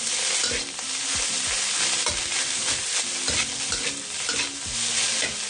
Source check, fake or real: real